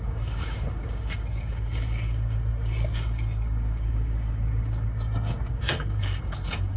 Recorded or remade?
remade